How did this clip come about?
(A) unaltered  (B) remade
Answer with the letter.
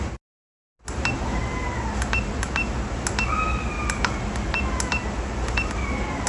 A